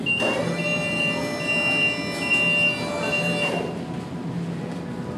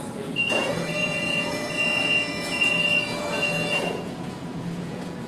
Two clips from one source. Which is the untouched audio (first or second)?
first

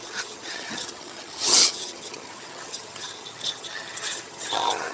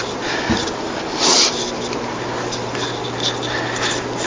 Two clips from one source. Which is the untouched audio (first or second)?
second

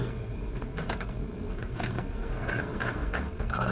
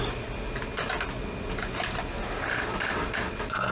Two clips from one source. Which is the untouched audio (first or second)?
second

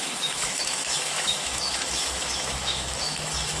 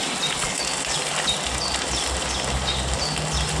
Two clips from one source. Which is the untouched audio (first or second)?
second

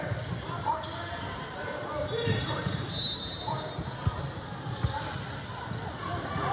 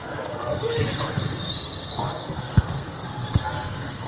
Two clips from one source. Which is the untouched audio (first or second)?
first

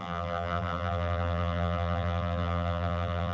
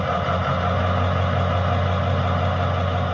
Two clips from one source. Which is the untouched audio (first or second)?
second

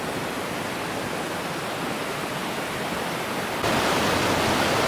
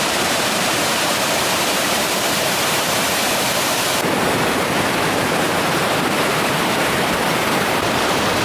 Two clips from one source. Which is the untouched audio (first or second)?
first